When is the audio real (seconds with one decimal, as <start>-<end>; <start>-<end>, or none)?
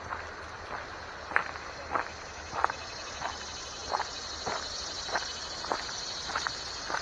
0.0-7.0